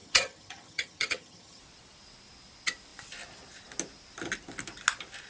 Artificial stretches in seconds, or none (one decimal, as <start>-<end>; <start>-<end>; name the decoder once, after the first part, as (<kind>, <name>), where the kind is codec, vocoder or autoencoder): 0.0-1.6 (vocoder, HiFi-GAN)